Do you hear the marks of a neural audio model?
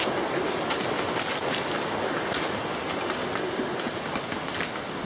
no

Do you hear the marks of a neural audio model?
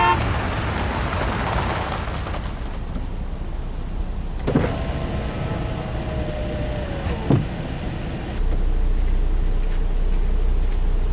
no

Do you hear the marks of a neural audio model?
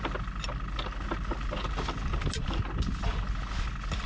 no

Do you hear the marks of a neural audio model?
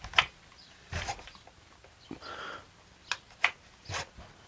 no